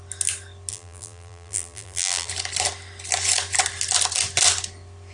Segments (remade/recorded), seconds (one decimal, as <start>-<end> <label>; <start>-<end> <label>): 0.0-0.7 recorded; 0.7-2.3 remade; 2.3-5.1 recorded